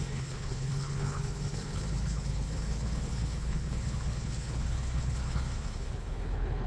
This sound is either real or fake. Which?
fake